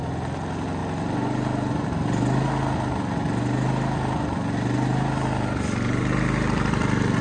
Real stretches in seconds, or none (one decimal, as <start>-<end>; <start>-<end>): 0.0-7.2